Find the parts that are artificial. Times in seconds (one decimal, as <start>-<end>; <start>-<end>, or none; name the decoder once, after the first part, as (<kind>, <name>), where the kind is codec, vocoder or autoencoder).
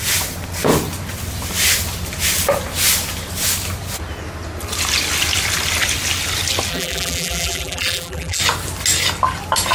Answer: 6.7-8.4 (vocoder, BigVGAN v2)